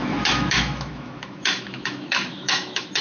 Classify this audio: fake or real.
fake